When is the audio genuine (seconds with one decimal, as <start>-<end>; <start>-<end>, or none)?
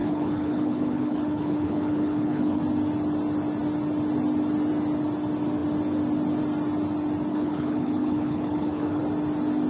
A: 2.6-7.3; 9.0-9.7